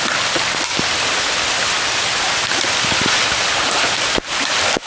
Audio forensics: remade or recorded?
recorded